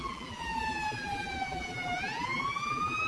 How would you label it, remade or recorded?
remade